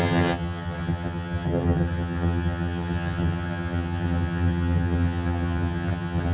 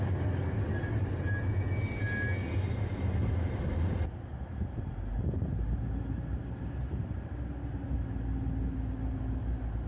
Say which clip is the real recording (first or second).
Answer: second